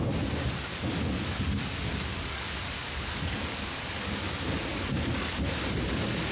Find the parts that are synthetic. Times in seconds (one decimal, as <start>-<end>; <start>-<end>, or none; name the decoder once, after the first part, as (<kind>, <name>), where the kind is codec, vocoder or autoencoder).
0.7-4.3 (codec, DAC); 4.7-5.4